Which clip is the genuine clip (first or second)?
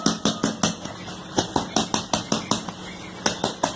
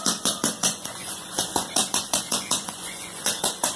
first